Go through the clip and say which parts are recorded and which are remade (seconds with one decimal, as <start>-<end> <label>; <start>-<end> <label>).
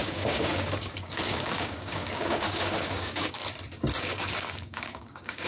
0.0-3.4 remade; 3.4-4.0 recorded; 4.0-5.5 remade